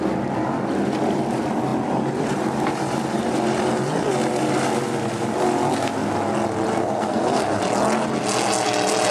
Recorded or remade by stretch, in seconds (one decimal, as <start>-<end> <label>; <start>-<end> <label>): 0.0-6.7 recorded; 6.7-7.6 remade; 7.6-9.1 recorded